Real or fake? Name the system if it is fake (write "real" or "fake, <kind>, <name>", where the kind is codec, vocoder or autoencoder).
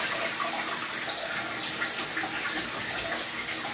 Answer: real